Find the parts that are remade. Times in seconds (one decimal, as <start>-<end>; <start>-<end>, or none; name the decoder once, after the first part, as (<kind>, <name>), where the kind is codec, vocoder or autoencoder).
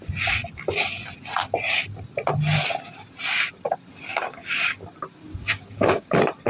4.1-4.8 (codec, DAC); 5.4-6.1